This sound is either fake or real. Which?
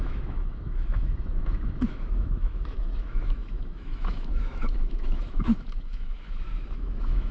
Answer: fake